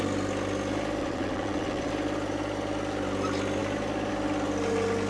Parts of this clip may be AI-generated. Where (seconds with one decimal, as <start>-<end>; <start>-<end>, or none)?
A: 1.0-1.9